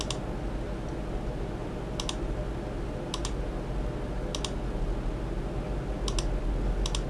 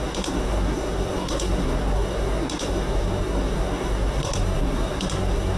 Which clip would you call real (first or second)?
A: first